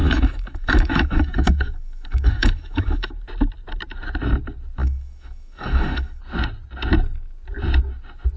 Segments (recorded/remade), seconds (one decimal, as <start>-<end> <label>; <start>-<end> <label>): 0.0-3.1 remade; 3.1-4.8 recorded; 4.8-6.2 remade; 6.2-8.4 recorded